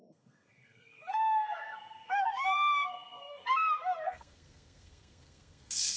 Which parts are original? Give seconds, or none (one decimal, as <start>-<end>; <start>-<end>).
none